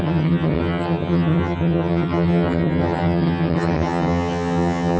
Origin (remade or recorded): remade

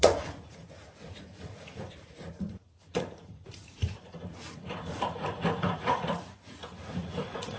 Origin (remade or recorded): remade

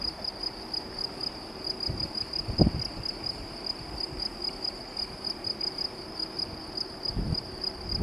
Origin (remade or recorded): recorded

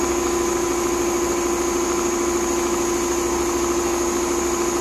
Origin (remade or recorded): recorded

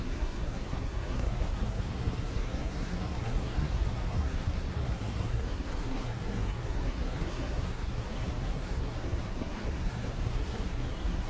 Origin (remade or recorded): remade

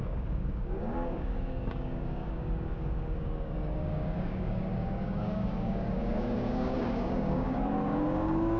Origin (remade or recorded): remade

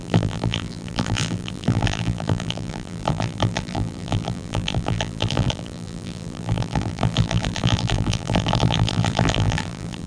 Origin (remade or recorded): remade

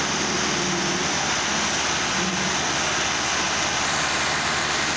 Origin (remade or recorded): recorded